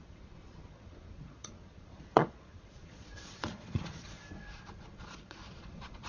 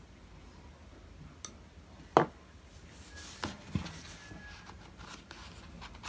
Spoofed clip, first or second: first